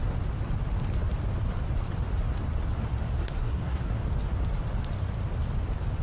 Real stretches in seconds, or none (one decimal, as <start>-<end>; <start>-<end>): 0.0-3.2; 4.0-6.0